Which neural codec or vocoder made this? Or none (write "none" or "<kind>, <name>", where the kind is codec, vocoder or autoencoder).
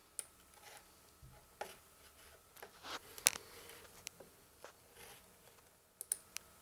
none